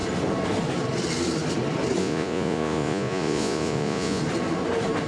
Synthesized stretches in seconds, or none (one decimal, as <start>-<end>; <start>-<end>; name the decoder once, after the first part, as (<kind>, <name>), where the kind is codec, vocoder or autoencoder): 2.0-4.2 (vocoder, Vocos)

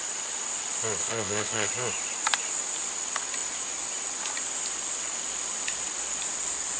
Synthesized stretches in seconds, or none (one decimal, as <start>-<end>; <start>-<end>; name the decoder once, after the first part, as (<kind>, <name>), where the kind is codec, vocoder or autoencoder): 1.0-1.7 (codec, ZipCodec)

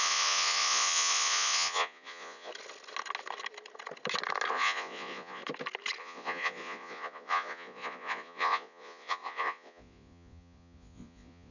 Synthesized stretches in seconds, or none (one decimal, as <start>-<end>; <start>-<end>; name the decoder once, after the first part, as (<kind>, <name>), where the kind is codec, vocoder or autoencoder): 0.0-2.5 (vocoder, Vocos); 4.5-5.4; 6.0-11.5

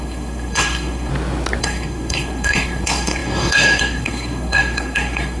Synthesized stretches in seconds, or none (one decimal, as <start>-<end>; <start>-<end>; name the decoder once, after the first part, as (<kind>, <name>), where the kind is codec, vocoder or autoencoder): 0.0-1.1 (codec, SNAC); 1.6-5.4